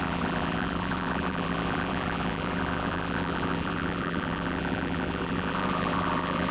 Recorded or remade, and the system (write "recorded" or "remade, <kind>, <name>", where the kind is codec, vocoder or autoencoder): remade, vocoder, BigVGAN v2